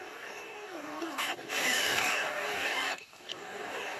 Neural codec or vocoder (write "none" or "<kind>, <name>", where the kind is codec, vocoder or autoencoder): codec, DAC